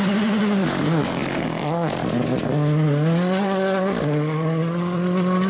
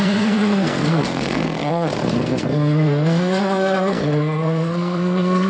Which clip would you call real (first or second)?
first